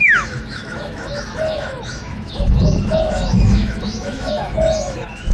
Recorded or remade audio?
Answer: remade